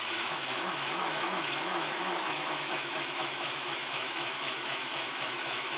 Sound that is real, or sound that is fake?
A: fake